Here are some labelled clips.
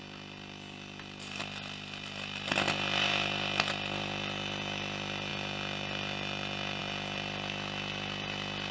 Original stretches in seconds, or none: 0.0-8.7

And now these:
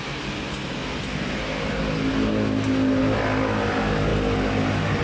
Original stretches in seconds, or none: 0.0-5.0